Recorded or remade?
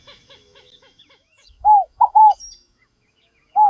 remade